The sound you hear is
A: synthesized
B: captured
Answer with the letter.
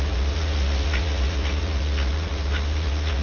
A